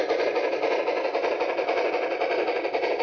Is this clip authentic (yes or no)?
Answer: yes